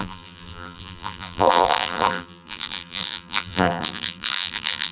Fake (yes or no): yes